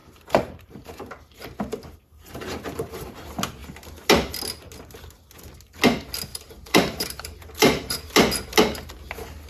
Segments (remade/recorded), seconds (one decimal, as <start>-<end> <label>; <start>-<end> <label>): 0.0-1.6 remade; 1.6-2.1 recorded; 2.1-3.2 remade; 3.2-6.3 recorded; 6.3-8.0 remade; 8.0-9.5 recorded